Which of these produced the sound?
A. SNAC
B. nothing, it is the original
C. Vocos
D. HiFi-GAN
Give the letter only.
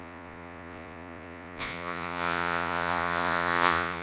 C